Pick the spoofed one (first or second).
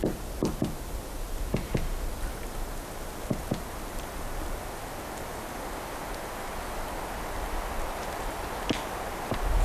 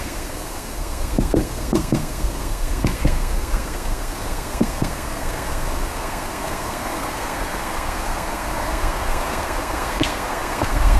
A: second